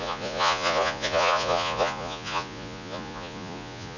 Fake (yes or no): yes